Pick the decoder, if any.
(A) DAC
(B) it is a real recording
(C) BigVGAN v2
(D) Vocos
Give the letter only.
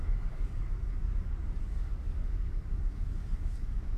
A